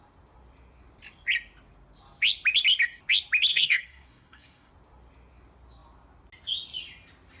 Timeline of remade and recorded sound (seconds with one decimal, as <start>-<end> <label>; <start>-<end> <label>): 0.0-3.5 recorded; 3.5-4.7 remade; 4.7-7.4 recorded